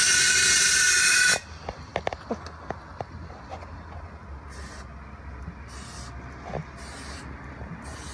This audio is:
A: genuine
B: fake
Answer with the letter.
A